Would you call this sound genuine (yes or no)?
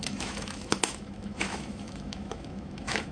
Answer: no